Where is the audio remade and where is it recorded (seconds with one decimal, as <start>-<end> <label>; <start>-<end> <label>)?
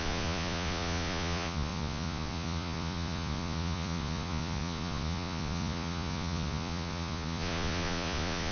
0.0-8.5 remade